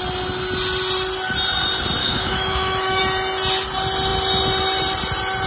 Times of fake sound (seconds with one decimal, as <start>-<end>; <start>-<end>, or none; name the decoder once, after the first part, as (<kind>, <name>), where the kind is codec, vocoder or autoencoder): 2.0-3.0 (autoencoder, DAC-VAE)